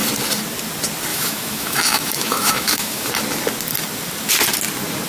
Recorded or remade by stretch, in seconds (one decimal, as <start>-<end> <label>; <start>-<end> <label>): 0.0-1.1 recorded; 1.1-3.1 remade; 3.1-5.1 recorded